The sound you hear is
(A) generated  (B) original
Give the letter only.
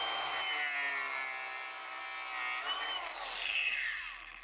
B